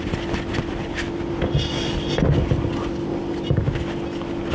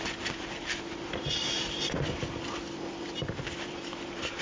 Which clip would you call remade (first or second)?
second